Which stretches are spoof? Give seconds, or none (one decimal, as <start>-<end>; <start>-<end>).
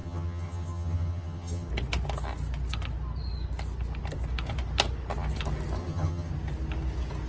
0.0-1.7; 5.8-6.3